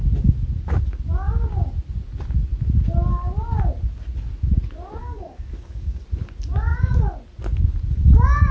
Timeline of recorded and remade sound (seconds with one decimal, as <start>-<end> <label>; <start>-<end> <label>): 0.0-5.0 recorded; 5.0-6.0 remade; 6.0-8.5 recorded